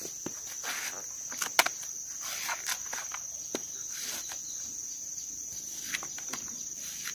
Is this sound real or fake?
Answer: real